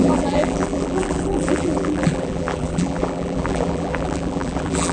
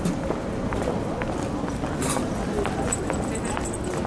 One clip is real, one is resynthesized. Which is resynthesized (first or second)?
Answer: first